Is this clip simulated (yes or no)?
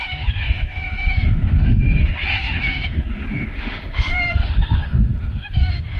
yes